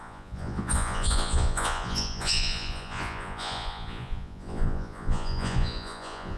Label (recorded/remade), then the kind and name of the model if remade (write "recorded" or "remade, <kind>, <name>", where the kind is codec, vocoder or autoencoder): remade, vocoder, Vocos